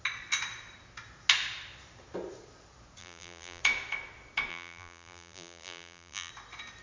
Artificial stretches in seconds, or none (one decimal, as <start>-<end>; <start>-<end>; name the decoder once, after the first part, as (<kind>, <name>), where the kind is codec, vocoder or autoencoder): 3.0-3.6 (vocoder, BigVGAN v2); 4.5-6.3